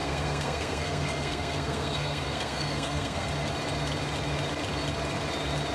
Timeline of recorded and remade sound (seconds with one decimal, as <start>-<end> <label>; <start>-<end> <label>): 0.0-3.3 remade; 3.3-5.7 recorded